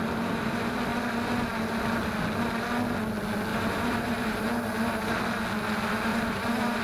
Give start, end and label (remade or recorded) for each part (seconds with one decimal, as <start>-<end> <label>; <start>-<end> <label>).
0.0-3.5 recorded; 3.5-4.5 remade; 4.5-6.1 recorded; 6.1-6.8 remade

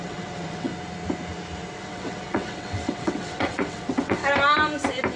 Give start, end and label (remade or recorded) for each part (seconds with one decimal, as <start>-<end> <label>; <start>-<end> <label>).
0.0-0.7 remade; 0.7-1.8 recorded; 1.8-4.2 remade; 4.2-5.2 recorded

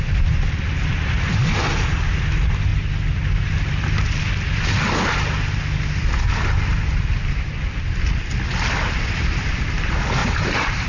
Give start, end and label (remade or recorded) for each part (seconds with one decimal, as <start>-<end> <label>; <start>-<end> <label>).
0.0-10.2 recorded; 10.2-10.9 remade

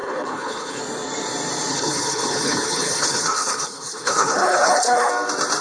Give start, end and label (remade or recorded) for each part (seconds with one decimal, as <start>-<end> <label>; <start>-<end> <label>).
0.0-0.8 remade; 0.8-1.7 recorded; 1.7-5.1 remade; 5.1-5.6 recorded

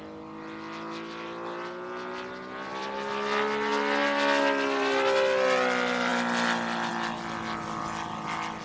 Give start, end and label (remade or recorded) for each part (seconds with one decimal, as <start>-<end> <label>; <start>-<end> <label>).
0.0-8.6 recorded